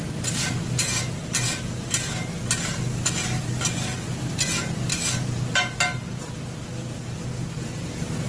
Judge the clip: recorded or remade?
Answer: recorded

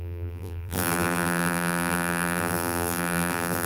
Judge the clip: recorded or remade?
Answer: remade